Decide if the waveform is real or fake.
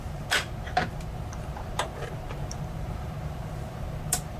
fake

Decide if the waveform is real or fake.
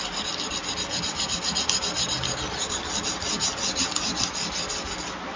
real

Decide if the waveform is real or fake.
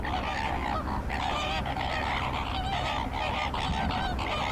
real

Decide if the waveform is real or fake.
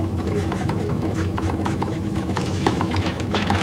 fake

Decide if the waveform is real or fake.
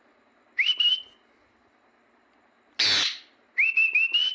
real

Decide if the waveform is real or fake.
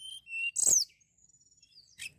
real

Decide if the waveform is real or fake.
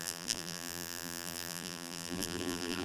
fake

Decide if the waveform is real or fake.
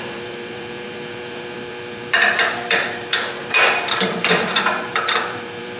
fake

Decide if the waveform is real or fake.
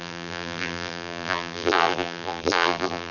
fake